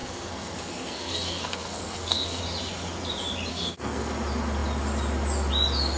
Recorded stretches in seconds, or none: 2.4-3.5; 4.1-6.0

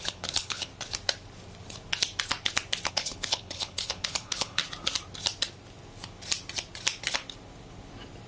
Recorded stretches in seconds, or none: 0.7-2.9; 4.6-8.3